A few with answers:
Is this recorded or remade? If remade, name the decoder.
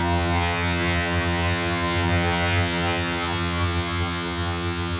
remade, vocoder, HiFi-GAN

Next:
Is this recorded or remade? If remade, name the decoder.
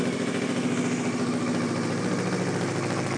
recorded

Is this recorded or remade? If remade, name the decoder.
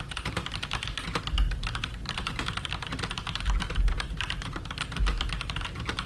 remade, vocoder, BigVGAN v2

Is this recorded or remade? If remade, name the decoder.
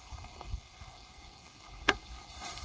remade, codec, SNAC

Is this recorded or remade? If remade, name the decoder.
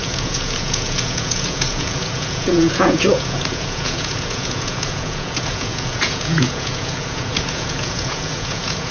remade, vocoder, Vocos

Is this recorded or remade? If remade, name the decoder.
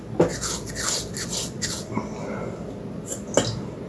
recorded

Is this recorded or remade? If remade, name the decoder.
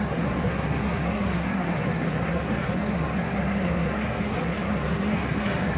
remade, codec, SNAC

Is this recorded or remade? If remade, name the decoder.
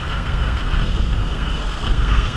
remade, codec, SNAC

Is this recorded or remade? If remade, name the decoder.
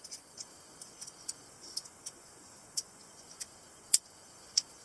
remade, vocoder, Vocos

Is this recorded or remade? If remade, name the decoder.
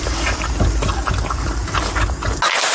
recorded